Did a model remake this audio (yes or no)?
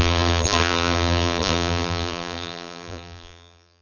yes